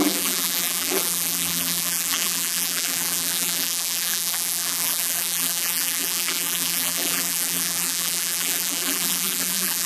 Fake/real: fake